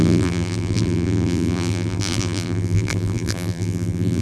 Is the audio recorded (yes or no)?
no